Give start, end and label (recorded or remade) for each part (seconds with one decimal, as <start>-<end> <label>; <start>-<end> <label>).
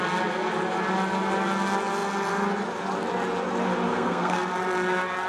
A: 0.0-3.9 recorded; 3.9-4.5 remade; 4.5-5.3 recorded